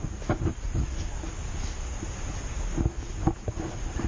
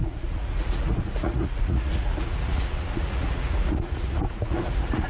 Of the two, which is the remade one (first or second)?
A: second